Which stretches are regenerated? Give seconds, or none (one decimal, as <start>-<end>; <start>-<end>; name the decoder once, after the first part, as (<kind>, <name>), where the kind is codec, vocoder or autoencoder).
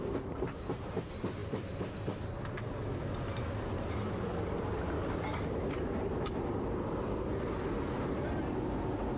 1.4-5.1 (vocoder, BigVGAN v2)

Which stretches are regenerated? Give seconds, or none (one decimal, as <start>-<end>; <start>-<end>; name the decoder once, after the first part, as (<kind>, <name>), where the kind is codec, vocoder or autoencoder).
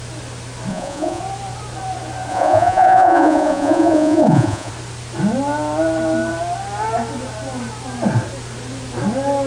0.7-1.2 (vocoder, Vocos); 2.3-4.7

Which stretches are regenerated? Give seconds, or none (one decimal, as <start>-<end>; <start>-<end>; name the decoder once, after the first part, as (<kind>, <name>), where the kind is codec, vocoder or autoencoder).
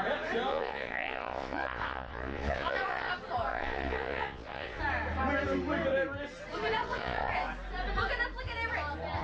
0.5-3.1 (vocoder, Vocos); 3.5-4.8; 6.8-7.3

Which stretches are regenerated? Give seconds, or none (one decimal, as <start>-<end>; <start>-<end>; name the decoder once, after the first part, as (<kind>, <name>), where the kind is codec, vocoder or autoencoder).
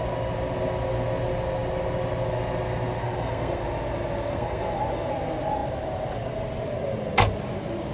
3.0-3.6 (codec, SNAC); 4.3-4.8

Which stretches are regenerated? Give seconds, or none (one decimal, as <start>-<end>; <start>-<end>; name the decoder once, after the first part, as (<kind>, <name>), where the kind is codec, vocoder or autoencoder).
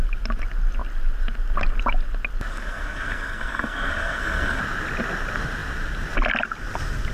2.5-4.6 (codec, SNAC)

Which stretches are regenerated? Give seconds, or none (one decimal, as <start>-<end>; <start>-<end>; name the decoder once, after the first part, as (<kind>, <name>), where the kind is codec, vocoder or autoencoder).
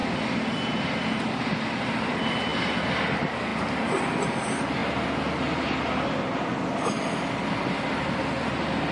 none